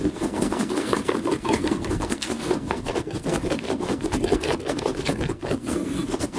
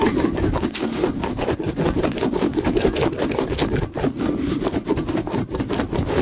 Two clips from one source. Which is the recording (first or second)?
second